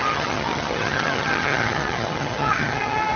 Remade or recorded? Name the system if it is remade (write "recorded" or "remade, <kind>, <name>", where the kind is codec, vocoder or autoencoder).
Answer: remade, vocoder, HiFi-GAN